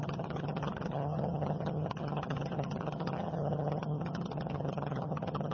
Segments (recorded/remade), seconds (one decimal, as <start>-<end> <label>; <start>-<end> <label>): 0.0-5.5 remade